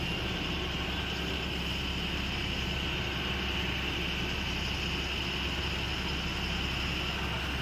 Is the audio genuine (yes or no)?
yes